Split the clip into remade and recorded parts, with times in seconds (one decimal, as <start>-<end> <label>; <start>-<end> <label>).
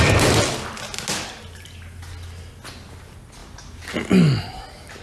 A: 0.0-5.0 recorded